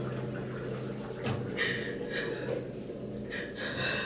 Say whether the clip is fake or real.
real